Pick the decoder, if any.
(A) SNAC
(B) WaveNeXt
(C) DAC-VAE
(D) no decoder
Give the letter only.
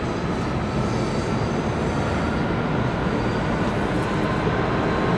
D